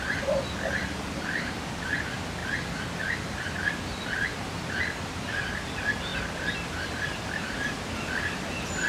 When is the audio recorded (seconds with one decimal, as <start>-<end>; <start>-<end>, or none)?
0.0-8.9